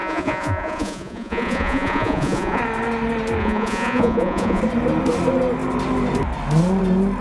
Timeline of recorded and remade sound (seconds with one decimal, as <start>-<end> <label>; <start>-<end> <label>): 0.0-2.6 remade; 2.6-3.4 recorded; 3.4-4.6 remade; 4.6-7.2 recorded